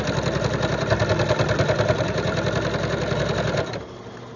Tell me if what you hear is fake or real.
real